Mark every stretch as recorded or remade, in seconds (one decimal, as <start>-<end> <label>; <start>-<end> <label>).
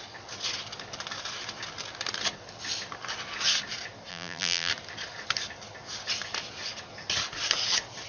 0.0-4.1 recorded; 4.1-4.7 remade; 4.7-8.1 recorded